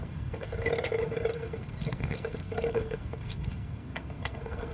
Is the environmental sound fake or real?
fake